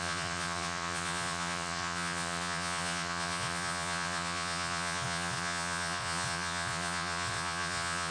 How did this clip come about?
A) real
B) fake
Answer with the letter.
B